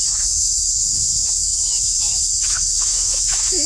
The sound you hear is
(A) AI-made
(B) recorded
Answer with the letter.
A